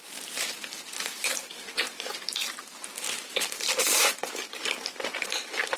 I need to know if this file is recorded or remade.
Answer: remade